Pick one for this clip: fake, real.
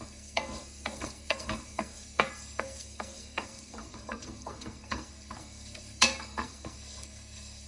fake